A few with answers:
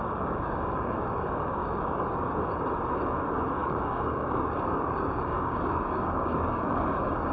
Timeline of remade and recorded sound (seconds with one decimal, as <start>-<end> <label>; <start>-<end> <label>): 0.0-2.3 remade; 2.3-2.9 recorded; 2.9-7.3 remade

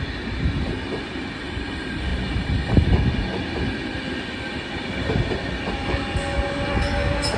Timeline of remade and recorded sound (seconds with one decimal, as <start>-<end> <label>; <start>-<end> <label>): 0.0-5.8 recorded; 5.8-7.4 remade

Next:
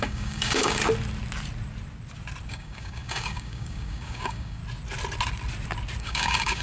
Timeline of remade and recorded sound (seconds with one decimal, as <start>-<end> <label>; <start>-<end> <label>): 0.0-0.8 remade; 0.8-2.5 recorded; 2.5-4.6 remade; 4.6-6.0 recorded; 6.0-6.6 remade